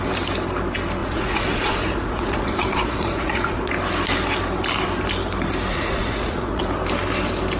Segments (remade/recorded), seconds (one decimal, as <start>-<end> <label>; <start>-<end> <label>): 0.0-1.0 recorded; 1.0-3.7 remade; 3.7-5.7 recorded; 5.7-6.6 remade; 6.6-7.6 recorded